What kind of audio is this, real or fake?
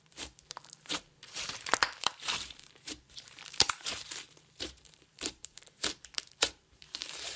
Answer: fake